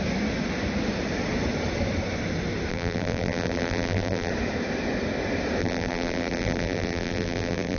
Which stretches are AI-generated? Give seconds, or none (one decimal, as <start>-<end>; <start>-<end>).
2.7-4.3; 5.6-7.8